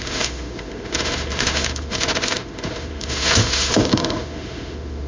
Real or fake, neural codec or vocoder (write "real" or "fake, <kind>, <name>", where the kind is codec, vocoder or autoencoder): fake, autoencoder, DAC-VAE